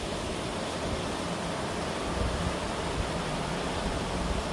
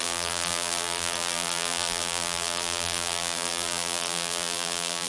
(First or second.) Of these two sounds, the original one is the first